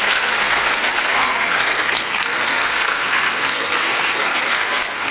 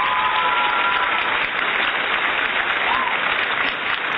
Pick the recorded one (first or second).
second